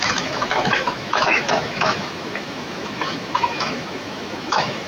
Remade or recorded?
remade